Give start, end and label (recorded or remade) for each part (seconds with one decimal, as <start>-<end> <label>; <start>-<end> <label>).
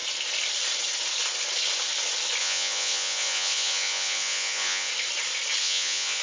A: 0.0-2.4 recorded; 2.4-4.9 remade; 4.9-5.6 recorded; 5.6-6.2 remade